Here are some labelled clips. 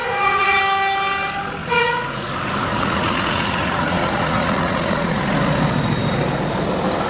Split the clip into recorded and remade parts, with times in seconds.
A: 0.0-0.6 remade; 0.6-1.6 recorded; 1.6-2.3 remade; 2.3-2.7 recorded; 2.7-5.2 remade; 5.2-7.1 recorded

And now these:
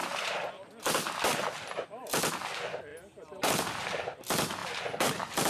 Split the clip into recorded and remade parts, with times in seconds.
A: 0.0-5.5 recorded

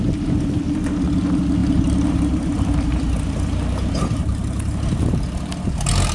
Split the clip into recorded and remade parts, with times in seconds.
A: 0.0-1.6 recorded; 1.6-5.3 remade; 5.3-6.1 recorded

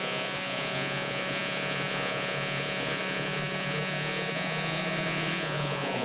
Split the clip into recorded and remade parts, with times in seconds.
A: 0.0-6.0 remade